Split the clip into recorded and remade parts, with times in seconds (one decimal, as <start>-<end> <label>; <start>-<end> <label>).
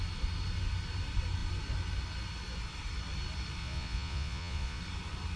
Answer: 0.0-3.6 recorded; 3.6-4.8 remade; 4.8-5.4 recorded